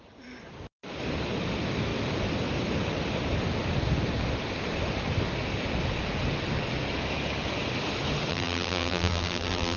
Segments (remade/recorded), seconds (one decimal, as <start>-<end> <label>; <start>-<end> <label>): 0.0-8.3 recorded; 8.3-9.8 remade